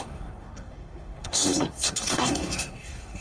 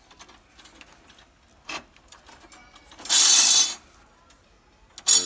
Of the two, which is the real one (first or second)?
second